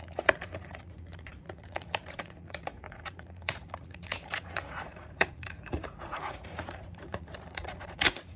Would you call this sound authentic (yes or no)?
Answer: no